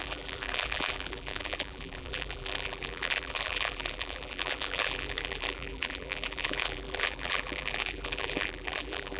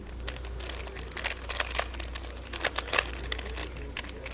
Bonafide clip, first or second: second